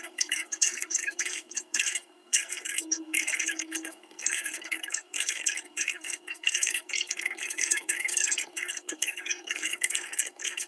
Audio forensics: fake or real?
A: fake